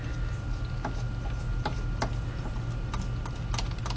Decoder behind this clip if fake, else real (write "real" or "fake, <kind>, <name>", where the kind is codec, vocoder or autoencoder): real